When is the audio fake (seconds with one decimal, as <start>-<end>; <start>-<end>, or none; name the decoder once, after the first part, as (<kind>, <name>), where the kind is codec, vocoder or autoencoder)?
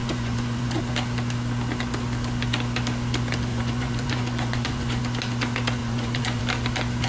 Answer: 0.0-0.8 (vocoder, Vocos); 3.5-5.0; 5.8-6.4